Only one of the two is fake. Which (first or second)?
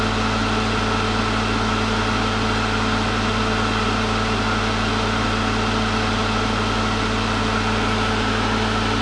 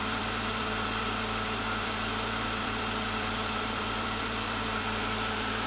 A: second